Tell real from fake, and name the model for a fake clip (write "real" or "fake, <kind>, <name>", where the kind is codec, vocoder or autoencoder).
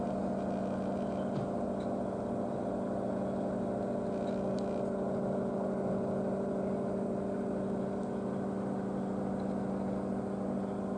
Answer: real